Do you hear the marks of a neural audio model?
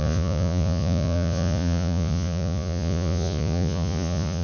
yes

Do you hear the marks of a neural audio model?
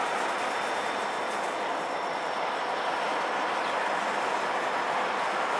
no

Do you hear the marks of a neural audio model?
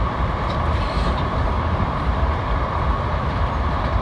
yes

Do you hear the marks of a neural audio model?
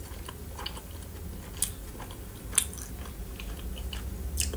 no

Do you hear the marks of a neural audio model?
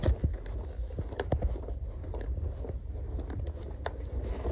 no